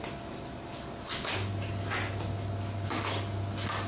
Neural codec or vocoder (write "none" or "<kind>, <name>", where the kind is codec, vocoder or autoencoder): none